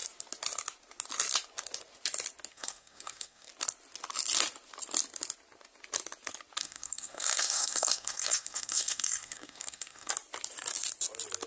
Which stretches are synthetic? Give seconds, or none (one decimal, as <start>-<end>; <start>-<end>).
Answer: 2.5-3.5; 6.6-10.1